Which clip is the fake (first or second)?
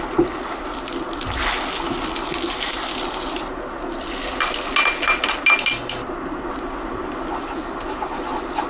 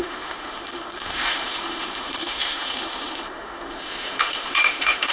second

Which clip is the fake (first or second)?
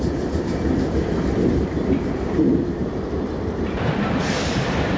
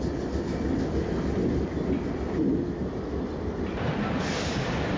first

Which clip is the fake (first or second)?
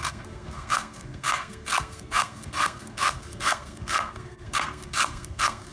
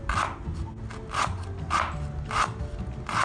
first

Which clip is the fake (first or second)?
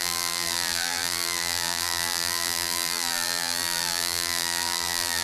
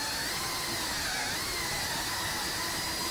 first